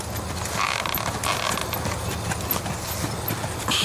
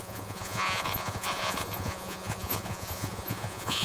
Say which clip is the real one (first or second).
first